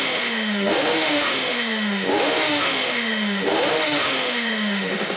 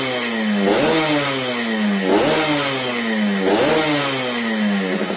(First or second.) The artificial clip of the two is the first